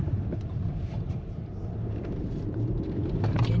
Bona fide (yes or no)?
no